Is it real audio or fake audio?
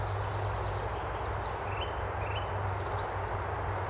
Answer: real